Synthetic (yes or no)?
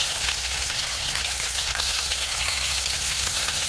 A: yes